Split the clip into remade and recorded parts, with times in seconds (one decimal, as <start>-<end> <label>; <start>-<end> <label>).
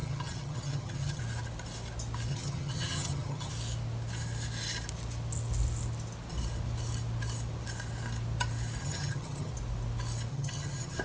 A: 0.0-1.2 remade; 1.2-2.3 recorded; 2.3-3.5 remade; 3.5-8.8 recorded; 8.8-9.5 remade; 9.5-10.3 recorded; 10.3-11.0 remade